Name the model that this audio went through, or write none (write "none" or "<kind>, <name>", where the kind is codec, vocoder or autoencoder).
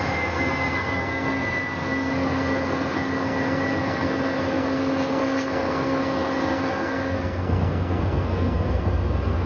codec, SNAC